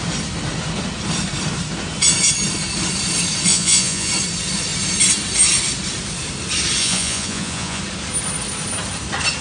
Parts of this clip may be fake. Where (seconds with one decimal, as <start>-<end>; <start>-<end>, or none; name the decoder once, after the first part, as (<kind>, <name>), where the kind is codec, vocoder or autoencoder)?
3.5-4.1 (vocoder, Vocos); 6.8-7.8